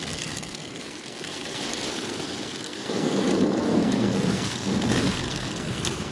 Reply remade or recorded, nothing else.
remade